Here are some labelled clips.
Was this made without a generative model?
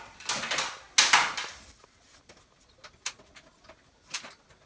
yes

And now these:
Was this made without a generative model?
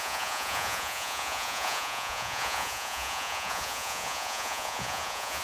no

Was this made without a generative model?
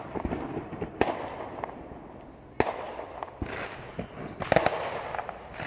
yes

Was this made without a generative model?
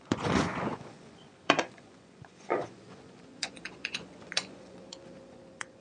no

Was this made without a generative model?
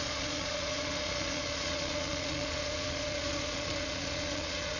no